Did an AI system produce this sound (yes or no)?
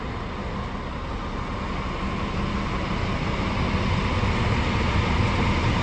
no